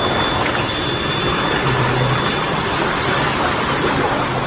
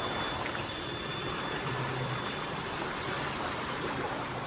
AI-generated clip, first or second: second